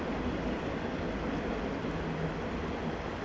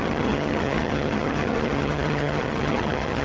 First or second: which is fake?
second